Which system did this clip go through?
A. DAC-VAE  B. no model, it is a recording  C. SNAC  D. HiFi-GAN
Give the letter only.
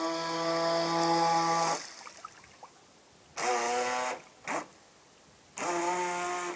B